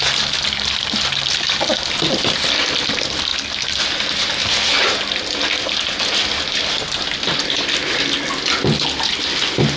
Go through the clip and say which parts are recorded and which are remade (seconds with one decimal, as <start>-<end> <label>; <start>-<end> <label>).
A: 0.0-9.8 recorded